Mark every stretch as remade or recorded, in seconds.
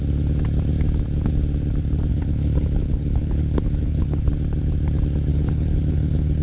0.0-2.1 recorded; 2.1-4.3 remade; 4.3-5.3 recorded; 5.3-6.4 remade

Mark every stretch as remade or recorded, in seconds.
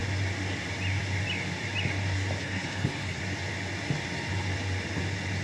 0.0-2.4 recorded; 2.4-3.2 remade; 3.2-5.4 recorded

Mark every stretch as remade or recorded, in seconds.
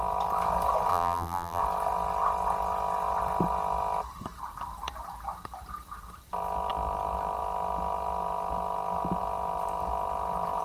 0.0-0.9 recorded; 0.9-1.6 remade; 1.6-10.6 recorded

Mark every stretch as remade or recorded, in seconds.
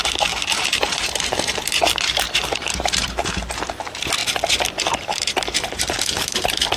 0.0-4.2 remade; 4.2-4.9 recorded; 4.9-6.8 remade